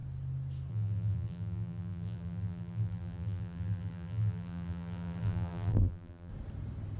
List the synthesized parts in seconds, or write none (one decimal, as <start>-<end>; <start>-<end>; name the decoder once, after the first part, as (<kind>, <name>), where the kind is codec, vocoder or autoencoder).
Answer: 0.7-6.3 (vocoder, BigVGAN v2)